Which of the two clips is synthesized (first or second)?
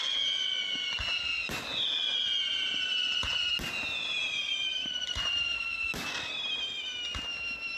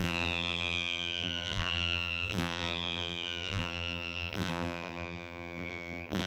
second